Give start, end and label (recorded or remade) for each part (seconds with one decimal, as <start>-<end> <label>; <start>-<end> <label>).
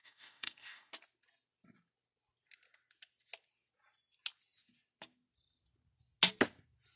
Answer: 0.0-0.9 remade; 0.9-7.0 recorded